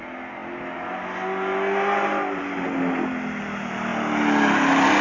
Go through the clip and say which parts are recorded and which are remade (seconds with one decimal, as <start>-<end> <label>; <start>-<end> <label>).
0.0-5.0 recorded